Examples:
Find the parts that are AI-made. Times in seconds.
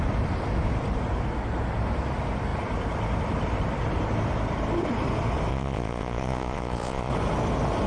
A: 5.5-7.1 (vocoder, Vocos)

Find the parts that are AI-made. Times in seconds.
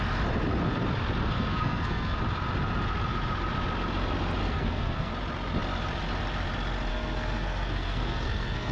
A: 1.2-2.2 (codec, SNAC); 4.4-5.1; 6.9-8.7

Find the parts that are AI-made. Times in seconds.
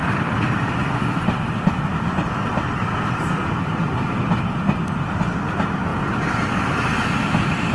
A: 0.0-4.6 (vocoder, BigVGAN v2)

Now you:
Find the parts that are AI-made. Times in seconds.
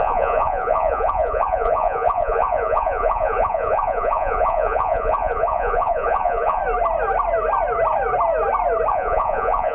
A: 0.0-6.6 (vocoder, Vocos); 8.9-9.7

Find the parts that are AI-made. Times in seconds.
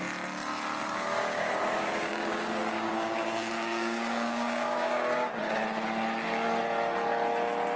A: 0.8-5.5 (codec, DAC)